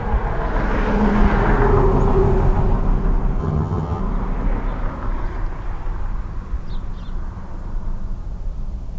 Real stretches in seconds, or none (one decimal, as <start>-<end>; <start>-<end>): 0.0-3.4; 4.0-9.0